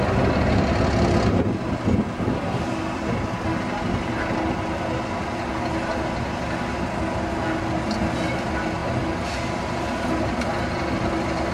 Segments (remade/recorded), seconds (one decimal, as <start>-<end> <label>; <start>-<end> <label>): 0.0-11.5 recorded